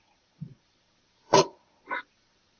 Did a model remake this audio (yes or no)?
yes